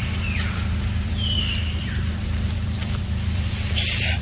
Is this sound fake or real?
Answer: fake